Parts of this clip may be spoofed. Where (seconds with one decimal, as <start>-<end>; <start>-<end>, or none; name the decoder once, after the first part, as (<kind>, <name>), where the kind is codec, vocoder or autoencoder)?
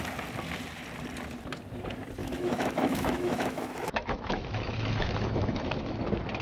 2.2-6.0 (autoencoder, DAC-VAE)